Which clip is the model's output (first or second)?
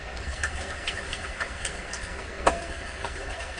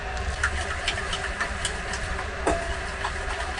first